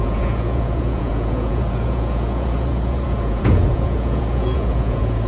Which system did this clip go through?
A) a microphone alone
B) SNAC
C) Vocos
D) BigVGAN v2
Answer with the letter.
C